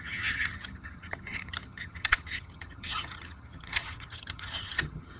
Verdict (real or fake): fake